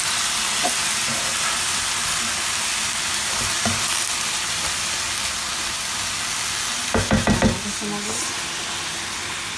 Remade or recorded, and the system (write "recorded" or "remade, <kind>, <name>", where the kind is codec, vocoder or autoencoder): recorded